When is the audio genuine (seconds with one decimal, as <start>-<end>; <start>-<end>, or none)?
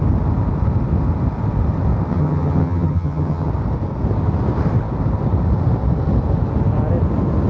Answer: 0.0-2.1; 3.5-7.5